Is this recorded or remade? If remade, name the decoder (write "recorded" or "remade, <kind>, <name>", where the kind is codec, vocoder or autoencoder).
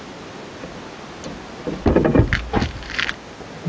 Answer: recorded